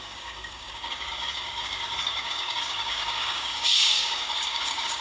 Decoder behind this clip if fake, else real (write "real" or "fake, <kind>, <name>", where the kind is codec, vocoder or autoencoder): fake, codec, DAC